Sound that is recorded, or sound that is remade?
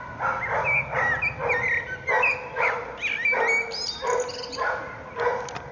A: recorded